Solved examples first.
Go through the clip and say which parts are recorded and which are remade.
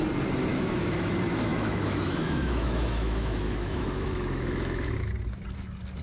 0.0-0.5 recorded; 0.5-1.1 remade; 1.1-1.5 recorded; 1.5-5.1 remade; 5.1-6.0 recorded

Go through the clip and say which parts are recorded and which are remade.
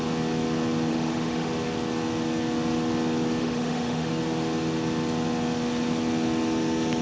0.0-0.9 recorded; 0.9-1.5 remade; 1.5-3.4 recorded; 3.4-4.1 remade; 4.1-7.0 recorded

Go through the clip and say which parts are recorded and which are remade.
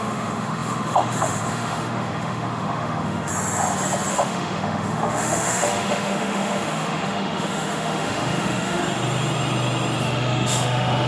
0.0-3.3 remade; 3.3-4.1 recorded; 4.1-8.8 remade; 8.8-10.0 recorded; 10.0-11.1 remade